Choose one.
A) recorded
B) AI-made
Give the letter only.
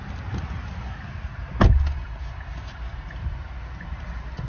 A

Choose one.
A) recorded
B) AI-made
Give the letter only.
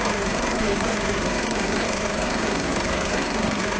B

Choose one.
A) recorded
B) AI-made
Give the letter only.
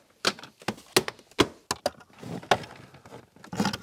A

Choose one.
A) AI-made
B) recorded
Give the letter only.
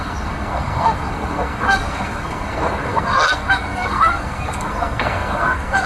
A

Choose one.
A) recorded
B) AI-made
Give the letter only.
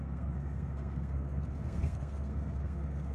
B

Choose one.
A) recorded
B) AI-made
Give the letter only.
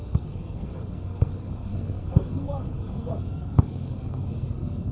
B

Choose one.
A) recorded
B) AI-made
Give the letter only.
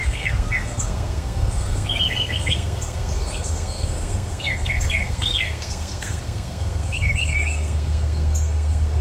B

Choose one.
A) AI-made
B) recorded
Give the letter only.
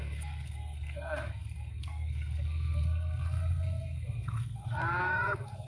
A